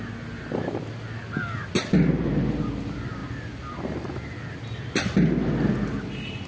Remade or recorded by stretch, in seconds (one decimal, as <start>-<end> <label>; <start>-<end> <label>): 0.0-6.5 recorded